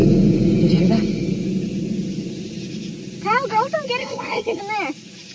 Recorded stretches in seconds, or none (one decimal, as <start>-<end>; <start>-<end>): 0.0-4.0; 4.6-5.3